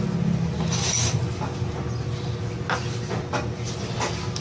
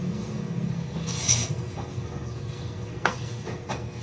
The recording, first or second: first